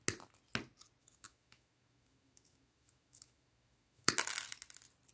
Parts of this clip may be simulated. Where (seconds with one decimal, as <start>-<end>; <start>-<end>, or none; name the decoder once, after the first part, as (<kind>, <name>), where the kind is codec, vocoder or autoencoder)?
1.0-4.1 (autoencoder, DAC-VAE)